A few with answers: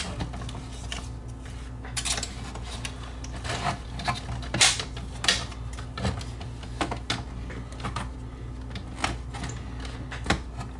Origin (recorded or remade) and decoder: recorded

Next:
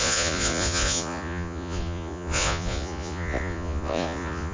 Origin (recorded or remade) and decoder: remade, vocoder, Vocos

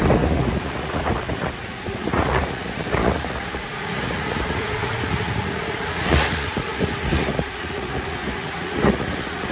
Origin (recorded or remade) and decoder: remade, vocoder, Vocos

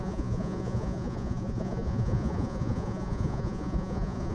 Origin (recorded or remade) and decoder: remade, vocoder, Vocos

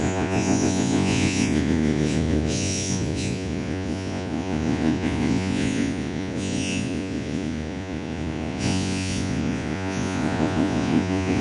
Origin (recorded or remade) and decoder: remade, vocoder, Vocos